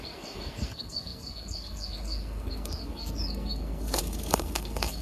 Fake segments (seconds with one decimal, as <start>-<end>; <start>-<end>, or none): 0.0-5.0